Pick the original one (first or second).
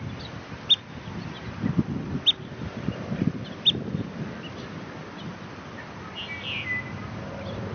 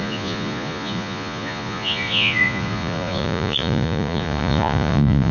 first